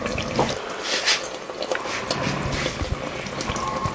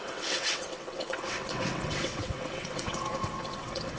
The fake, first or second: second